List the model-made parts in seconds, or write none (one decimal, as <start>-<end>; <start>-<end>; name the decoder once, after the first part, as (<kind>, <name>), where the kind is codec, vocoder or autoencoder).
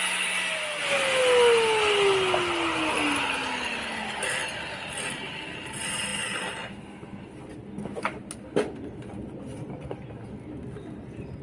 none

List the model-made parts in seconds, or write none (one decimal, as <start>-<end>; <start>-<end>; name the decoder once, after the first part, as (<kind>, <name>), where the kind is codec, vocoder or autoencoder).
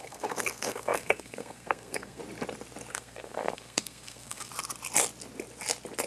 0.0-2.2 (codec, SNAC); 2.9-4.5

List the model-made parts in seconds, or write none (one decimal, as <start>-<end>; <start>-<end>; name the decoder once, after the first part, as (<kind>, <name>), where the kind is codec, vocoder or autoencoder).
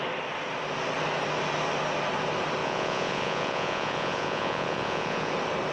2.6-5.3 (vocoder, Vocos)